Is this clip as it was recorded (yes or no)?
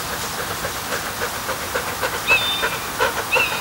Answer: yes